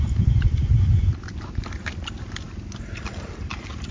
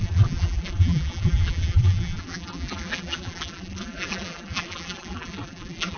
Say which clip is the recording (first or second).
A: first